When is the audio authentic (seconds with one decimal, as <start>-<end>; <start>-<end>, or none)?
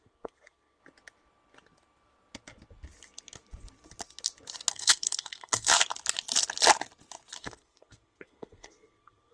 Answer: 0.8-4.7; 5.7-7.4